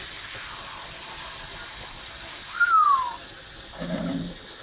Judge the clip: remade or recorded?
recorded